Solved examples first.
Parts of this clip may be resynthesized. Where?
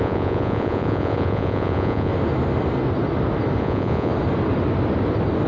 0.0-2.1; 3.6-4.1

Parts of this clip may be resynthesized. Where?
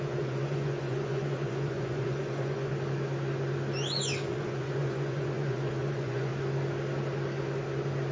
0.0-2.7; 4.3-6.3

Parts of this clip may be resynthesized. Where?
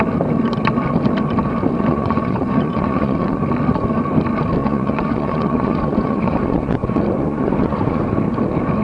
1.9-3.4; 4.6-8.0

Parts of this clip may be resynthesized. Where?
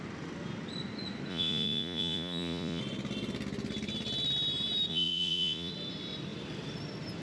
1.3-2.8; 4.9-5.7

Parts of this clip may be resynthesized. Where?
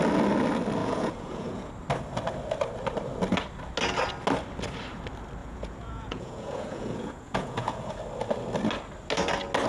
0.8-1.7; 5.4-7.9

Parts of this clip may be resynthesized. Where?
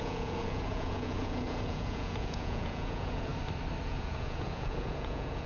0.0-3.3; 3.8-5.5